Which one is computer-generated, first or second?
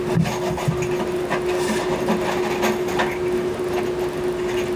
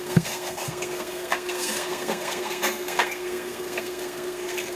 second